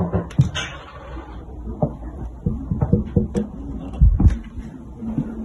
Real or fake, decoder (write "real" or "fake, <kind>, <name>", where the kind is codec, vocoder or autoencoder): real